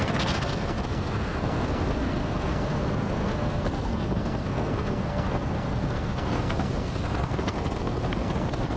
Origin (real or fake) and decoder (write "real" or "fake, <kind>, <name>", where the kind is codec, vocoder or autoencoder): fake, codec, SNAC